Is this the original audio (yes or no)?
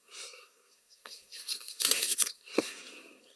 no